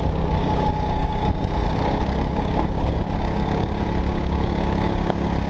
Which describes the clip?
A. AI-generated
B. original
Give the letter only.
A